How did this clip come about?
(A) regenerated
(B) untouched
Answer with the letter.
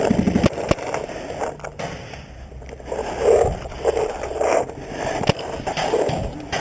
B